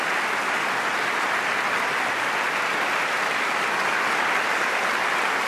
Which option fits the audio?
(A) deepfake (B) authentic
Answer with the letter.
B